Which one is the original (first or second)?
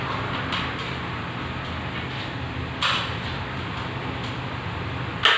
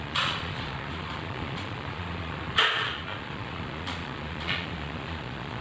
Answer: first